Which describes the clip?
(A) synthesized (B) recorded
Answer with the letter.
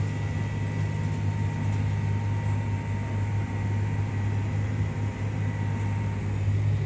B